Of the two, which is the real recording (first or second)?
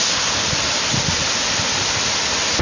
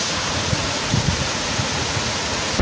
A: first